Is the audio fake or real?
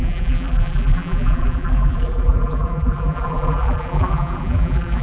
fake